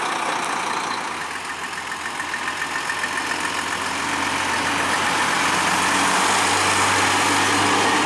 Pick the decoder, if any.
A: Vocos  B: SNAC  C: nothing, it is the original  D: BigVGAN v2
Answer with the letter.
C